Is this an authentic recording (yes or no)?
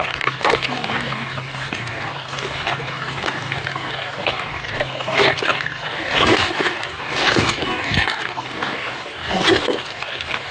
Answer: no